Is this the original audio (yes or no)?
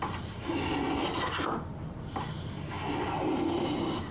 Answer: yes